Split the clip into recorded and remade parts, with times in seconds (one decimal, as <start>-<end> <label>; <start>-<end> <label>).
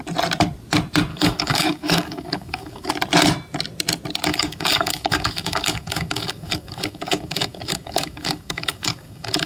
0.0-1.1 recorded; 1.1-2.9 remade; 2.9-4.3 recorded; 4.3-9.5 remade